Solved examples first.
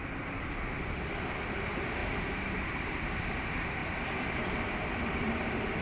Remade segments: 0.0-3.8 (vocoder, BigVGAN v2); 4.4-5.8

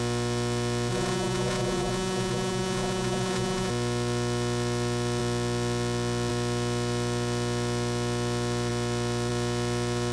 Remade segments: 0.9-3.7 (vocoder, Vocos)

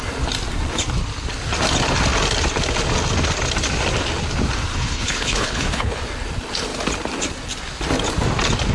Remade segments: 4.7-6.0 (codec, HILCodec)

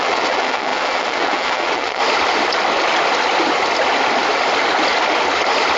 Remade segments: 0.0-2.0 (vocoder, WaveNeXt)

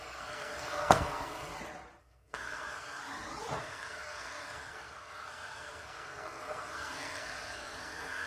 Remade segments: 0.0-1.5 (codec, SNAC); 2.0-3.0; 3.6-8.3

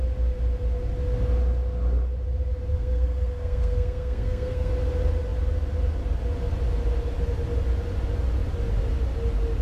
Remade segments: 2.7-4.7 (codec, SNAC)